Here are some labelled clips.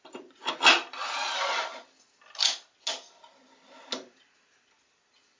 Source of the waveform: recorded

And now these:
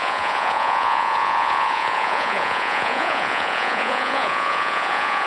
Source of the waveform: remade